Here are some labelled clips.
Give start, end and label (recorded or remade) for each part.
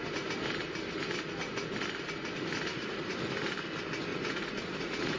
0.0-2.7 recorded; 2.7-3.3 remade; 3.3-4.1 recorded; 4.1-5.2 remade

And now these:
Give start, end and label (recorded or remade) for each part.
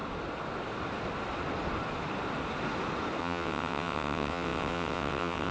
0.0-3.2 recorded; 3.2-5.5 remade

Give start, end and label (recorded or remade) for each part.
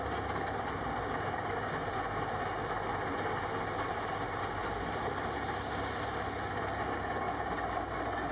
0.0-8.3 recorded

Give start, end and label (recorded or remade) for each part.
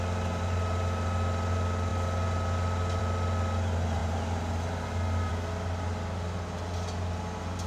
0.0-7.7 recorded